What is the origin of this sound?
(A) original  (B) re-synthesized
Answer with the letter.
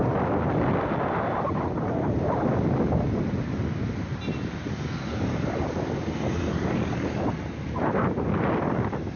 A